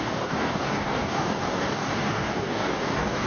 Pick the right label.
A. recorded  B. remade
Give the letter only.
B